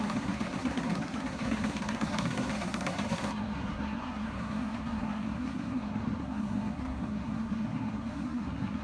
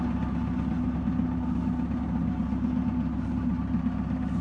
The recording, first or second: second